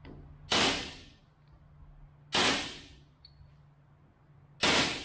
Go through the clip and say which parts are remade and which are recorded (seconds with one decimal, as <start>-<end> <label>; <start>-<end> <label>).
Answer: 0.0-5.0 recorded